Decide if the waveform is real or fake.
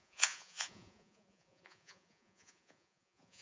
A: fake